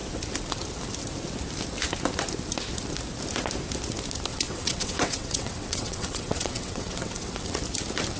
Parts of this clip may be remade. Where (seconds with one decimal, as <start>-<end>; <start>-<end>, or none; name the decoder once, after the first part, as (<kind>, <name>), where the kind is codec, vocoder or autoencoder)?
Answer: 4.3-7.6 (vocoder, WaveNeXt)